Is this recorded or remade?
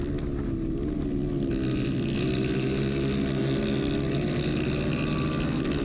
recorded